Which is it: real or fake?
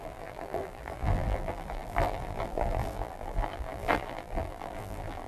fake